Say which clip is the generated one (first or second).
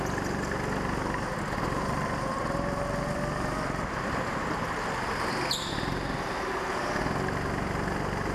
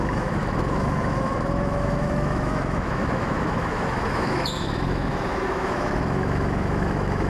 second